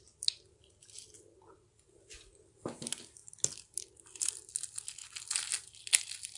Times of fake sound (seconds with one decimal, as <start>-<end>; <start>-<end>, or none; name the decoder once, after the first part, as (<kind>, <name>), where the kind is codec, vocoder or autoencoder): none